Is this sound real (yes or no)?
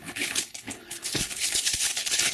no